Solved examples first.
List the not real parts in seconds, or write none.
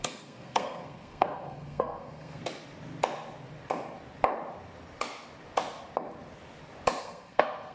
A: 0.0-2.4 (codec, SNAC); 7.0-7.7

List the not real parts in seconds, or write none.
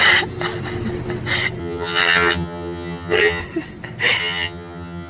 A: 1.6-3.4 (vocoder, HiFi-GAN); 4.2-5.1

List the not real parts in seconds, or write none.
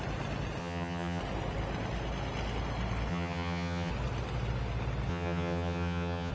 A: 0.6-1.2 (vocoder, HiFi-GAN); 3.1-3.9; 5.1-6.3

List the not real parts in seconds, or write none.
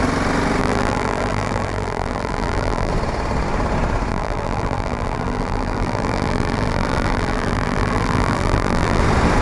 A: 0.6-2.9 (vocoder, BigVGAN v2); 4.1-9.0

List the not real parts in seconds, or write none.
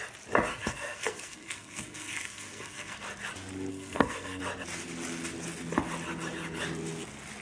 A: 0.5-3.0 (codec, SNAC); 3.7-4.4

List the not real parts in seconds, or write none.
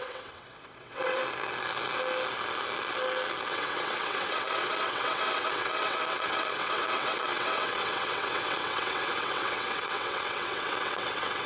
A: 0.0-1.2 (vocoder, WaveNeXt); 3.5-11.5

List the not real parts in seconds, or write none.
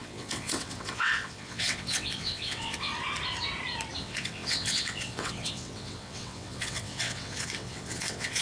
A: 0.0-2.9 (vocoder, WaveNeXt); 4.0-8.4